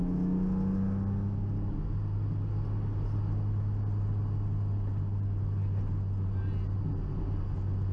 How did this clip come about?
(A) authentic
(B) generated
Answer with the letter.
A